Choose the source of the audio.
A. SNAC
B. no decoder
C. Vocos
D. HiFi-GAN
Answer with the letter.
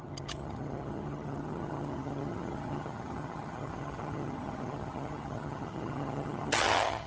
D